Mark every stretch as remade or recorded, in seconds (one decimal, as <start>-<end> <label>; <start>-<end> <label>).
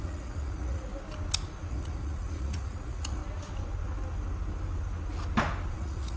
0.0-0.9 remade; 0.9-1.7 recorded; 1.7-3.2 remade; 3.2-5.7 recorded; 5.7-6.2 remade